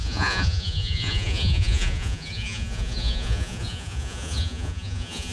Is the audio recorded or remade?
remade